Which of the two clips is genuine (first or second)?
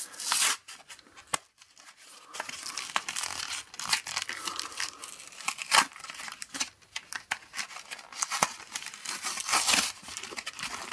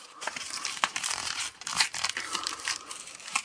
first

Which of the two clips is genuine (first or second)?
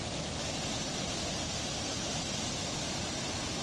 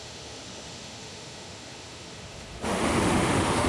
first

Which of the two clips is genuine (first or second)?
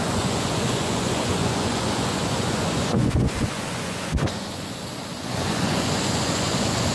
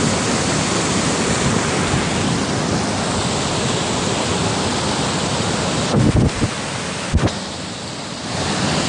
second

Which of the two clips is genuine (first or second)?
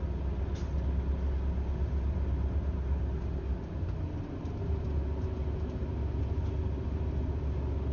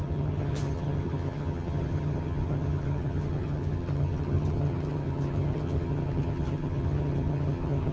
first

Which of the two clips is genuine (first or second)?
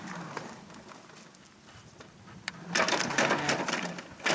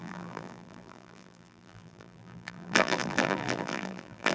first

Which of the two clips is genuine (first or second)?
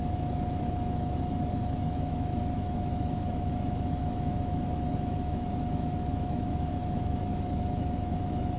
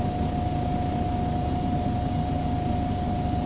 second